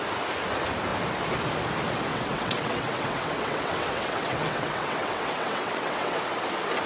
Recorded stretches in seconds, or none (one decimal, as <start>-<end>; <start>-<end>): 0.0-2.1; 6.2-6.9